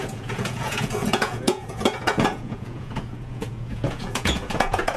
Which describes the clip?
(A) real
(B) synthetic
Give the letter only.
B